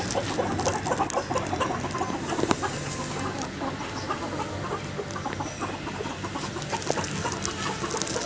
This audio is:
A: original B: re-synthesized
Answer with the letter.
A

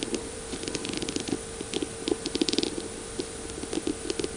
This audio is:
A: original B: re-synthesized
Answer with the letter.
A